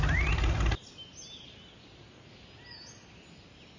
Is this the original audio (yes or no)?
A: yes